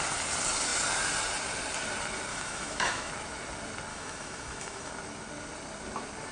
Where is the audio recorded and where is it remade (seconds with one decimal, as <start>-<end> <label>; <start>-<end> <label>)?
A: 0.0-2.3 recorded; 2.3-3.1 remade; 3.1-3.9 recorded; 3.9-4.9 remade; 4.9-6.3 recorded